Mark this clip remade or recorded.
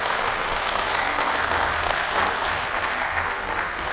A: remade